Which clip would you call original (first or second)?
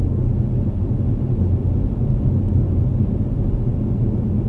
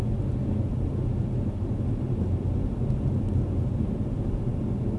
first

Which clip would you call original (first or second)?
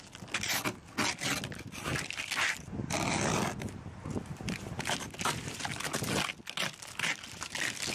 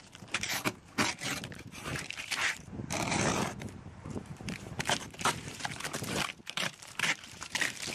first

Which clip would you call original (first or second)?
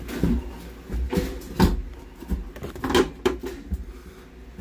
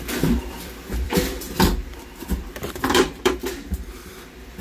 first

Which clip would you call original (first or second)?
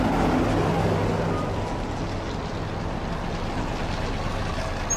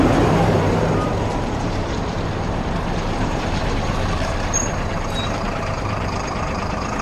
first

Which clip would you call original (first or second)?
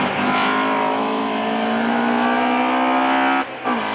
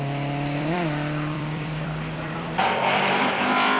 first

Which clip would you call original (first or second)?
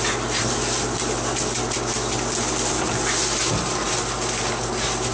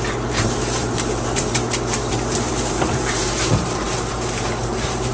first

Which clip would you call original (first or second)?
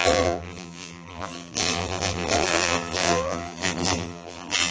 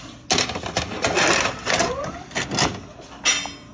second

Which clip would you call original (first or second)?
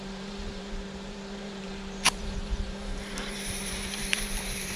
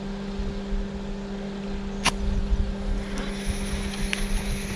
second